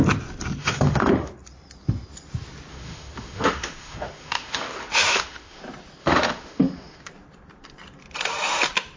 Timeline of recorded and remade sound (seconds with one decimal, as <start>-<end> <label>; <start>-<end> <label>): 0.0-0.6 recorded; 0.6-1.3 remade; 1.3-2.7 recorded; 2.7-5.6 remade; 5.6-6.0 recorded; 6.0-7.1 remade; 7.1-9.0 recorded